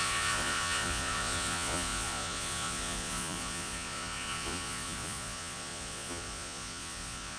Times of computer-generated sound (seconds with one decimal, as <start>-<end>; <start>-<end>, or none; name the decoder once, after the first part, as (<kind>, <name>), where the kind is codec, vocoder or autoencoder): 0.0-7.4 (vocoder, Vocos)